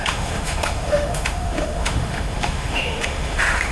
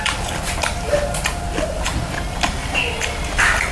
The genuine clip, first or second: second